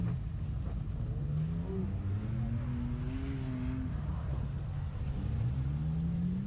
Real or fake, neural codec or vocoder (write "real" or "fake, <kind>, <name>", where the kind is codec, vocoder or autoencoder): real